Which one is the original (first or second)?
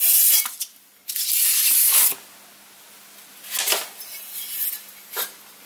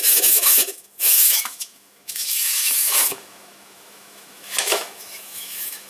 first